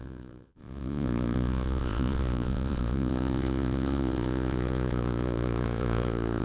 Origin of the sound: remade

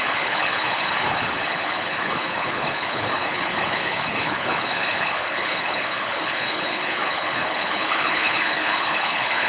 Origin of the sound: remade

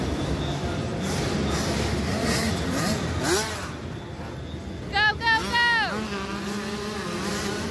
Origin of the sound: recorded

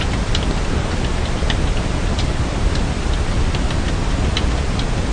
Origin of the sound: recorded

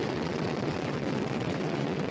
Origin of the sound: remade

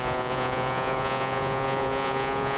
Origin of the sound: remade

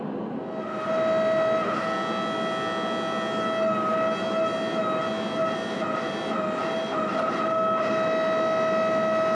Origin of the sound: recorded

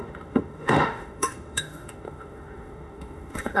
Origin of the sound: remade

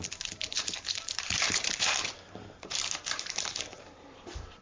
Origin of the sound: remade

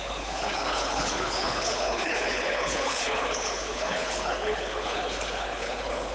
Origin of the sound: remade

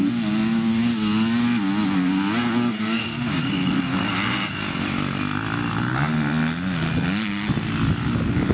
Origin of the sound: recorded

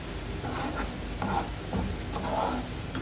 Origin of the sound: recorded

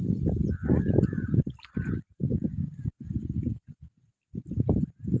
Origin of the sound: recorded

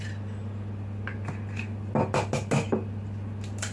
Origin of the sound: recorded